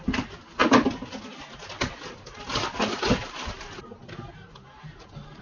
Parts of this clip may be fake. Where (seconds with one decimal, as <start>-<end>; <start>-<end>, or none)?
none